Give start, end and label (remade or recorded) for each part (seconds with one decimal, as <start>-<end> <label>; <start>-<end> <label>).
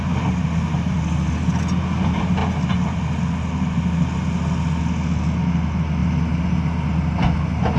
0.0-7.8 recorded